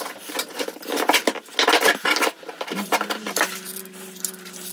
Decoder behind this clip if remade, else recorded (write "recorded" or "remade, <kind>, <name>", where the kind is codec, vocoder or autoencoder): recorded